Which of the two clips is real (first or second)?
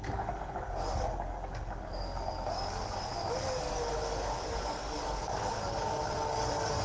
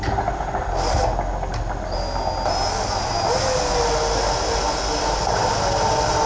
second